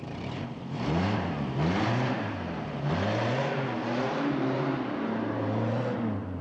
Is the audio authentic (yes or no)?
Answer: no